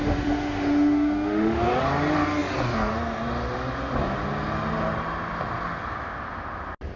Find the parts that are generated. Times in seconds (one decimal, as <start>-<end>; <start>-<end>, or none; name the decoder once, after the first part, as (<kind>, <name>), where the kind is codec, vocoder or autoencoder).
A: 0.0-1.8 (autoencoder, DAC-VAE)